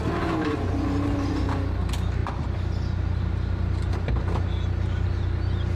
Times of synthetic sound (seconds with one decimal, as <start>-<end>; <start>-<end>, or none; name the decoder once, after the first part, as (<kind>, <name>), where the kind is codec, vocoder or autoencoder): none